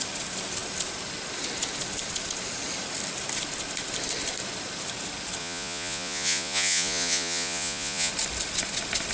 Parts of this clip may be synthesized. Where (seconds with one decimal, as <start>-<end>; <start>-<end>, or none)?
5.4-8.1